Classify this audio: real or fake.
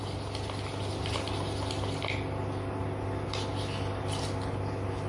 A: real